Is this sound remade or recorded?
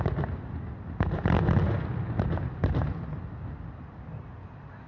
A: recorded